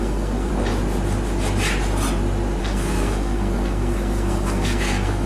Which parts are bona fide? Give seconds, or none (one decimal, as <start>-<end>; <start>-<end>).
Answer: 0.5-2.6

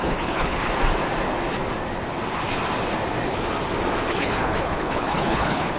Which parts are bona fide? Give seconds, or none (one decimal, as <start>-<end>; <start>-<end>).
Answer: 0.6-4.1

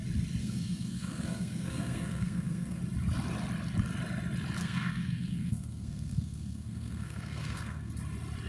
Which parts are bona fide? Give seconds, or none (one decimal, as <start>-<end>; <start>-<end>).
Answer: 0.0-0.4; 2.8-4.6; 7.9-8.5

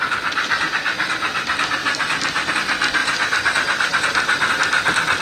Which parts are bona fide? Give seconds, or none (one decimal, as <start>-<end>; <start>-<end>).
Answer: 0.0-1.8; 2.5-3.0; 4.5-5.2

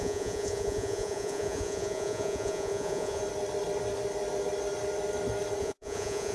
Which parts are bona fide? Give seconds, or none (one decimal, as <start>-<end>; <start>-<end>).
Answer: 3.2-5.6